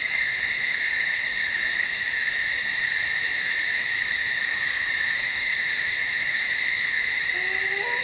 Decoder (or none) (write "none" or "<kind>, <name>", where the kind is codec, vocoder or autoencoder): autoencoder, DAC-VAE